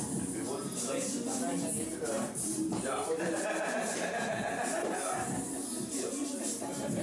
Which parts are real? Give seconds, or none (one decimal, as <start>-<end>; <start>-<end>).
0.0-1.9; 3.7-7.0